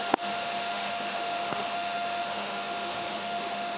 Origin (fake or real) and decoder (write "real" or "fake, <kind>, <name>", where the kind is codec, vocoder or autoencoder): fake, autoencoder, DAC-VAE